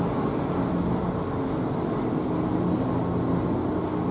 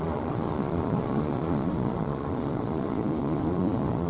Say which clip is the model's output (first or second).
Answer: second